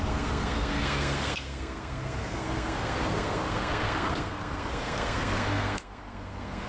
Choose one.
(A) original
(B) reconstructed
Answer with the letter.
B